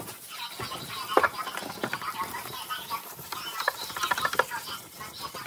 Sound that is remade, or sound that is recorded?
recorded